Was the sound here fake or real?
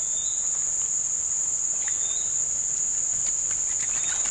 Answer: real